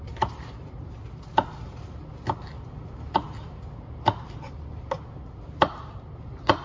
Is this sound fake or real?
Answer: real